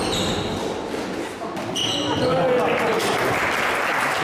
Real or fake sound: real